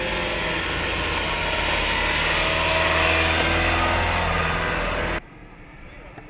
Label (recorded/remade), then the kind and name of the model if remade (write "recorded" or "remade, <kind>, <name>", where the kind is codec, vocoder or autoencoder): recorded